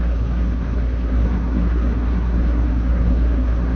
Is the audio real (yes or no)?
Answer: no